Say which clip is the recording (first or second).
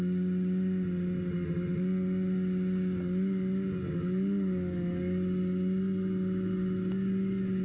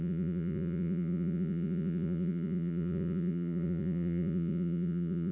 first